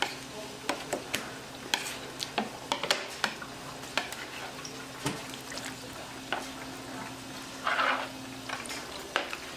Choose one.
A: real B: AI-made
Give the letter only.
A